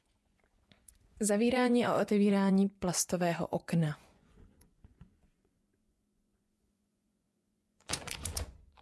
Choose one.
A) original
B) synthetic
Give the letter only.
B